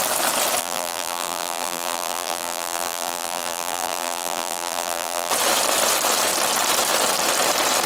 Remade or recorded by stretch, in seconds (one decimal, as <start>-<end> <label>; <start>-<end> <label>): 0.0-0.6 recorded; 0.6-5.3 remade; 5.3-7.9 recorded